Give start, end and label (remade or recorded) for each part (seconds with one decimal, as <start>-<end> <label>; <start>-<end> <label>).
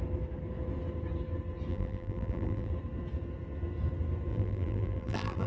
0.0-1.7 recorded; 1.7-2.7 remade; 2.7-4.3 recorded; 4.3-5.5 remade